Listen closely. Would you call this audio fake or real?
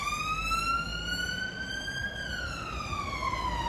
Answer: real